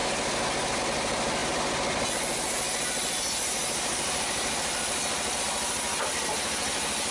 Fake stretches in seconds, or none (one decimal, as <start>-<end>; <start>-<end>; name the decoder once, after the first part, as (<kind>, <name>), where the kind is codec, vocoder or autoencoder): none